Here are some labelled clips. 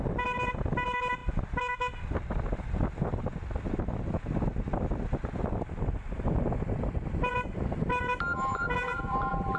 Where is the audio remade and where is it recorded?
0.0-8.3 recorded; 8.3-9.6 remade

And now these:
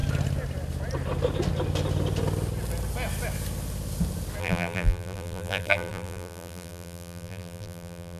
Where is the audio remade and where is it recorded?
0.0-4.4 recorded; 4.4-8.2 remade

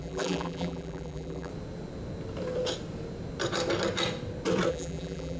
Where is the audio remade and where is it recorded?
0.0-1.5 remade; 1.5-4.7 recorded; 4.7-5.4 remade